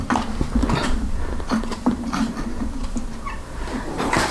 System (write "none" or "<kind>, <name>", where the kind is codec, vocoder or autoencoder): vocoder, BigVGAN v2